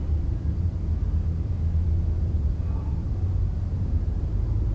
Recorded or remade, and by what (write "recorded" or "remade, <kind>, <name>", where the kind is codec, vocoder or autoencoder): recorded